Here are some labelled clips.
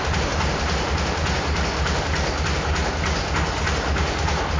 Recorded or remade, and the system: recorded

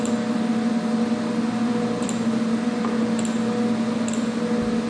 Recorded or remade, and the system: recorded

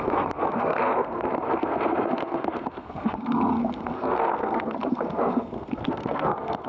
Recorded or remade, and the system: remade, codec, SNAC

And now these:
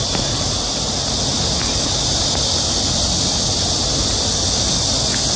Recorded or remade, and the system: recorded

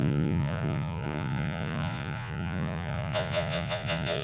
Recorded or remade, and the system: remade, vocoder, Vocos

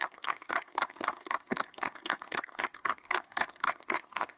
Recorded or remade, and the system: remade, codec, SNAC